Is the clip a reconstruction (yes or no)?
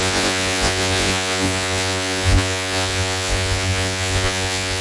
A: yes